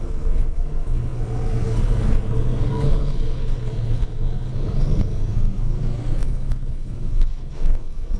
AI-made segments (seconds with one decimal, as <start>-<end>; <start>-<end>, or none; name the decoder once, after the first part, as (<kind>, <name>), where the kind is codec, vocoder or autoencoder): 0.0-8.2 (codec, SNAC)